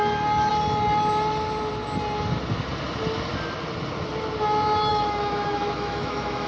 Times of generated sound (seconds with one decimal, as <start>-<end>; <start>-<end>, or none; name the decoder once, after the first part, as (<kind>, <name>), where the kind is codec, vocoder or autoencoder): 4.9-6.5 (autoencoder, DAC-VAE)